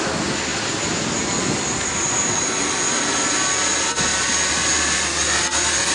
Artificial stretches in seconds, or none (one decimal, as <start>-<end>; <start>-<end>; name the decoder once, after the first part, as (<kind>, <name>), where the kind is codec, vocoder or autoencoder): none